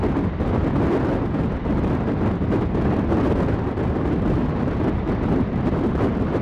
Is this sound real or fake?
real